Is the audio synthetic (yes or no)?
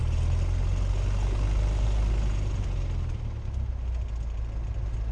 no